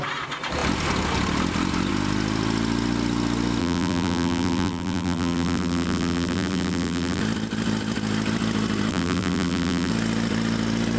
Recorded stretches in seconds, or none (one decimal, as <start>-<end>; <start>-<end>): 0.0-3.6; 7.2-8.9; 9.9-11.0